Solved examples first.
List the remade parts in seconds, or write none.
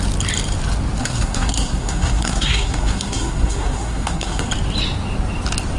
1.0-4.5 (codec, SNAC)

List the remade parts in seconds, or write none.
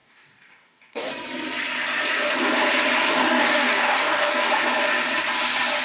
0.0-1.1 (codec, DAC); 3.1-4.5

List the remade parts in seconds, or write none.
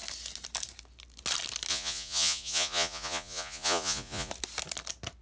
1.7-4.3 (vocoder, Vocos)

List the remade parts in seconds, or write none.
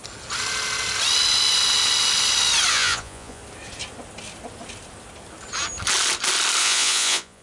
2.7-3.4 (vocoder, Vocos); 6.6-7.4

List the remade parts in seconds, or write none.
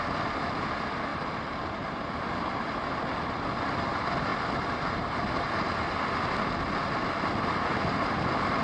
1.1-2.2 (vocoder, BigVGAN v2); 4.3-5.9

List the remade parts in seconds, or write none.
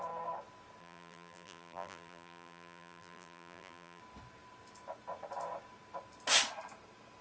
0.8-4.0 (vocoder, BigVGAN v2)